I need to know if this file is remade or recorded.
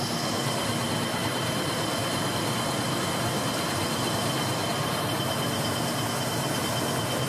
recorded